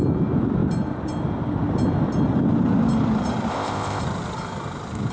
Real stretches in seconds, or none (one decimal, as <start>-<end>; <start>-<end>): 0.0-3.5; 4.0-5.1

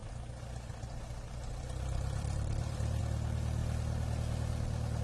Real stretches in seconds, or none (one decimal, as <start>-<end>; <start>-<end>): 3.0-5.0